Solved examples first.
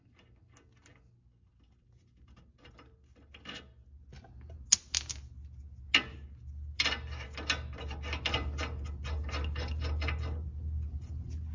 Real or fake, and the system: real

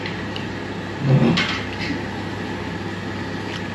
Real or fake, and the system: real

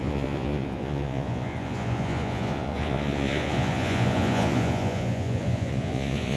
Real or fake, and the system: fake, vocoder, Vocos